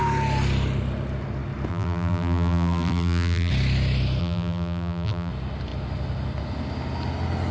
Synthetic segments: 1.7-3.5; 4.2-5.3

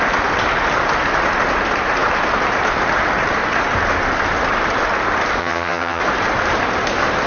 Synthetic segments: 5.4-6.0

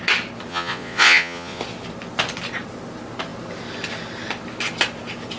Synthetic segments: 0.5-1.6

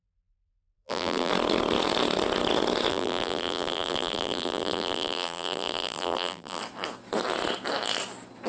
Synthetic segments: 0.0-1.3; 2.9-6.6

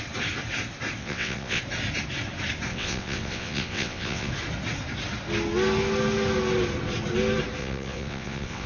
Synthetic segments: 1.0-1.6; 2.7-4.3; 7.6-8.7

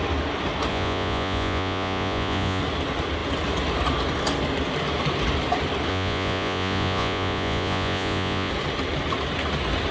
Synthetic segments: 0.7-2.6; 5.9-8.5

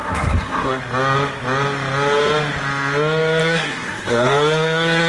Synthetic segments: 0.0-0.8; 3.4-5.1

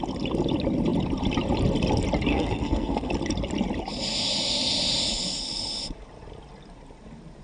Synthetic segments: 2.3-3.1